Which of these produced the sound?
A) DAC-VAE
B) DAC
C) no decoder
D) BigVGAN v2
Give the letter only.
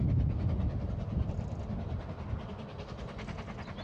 C